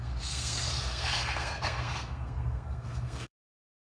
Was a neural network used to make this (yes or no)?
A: yes